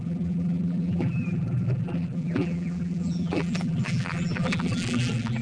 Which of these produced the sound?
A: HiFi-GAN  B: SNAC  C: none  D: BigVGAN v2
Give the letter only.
D